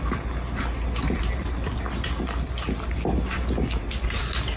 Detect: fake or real real